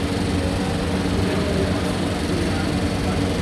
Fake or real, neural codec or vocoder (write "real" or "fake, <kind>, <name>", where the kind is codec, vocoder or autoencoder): real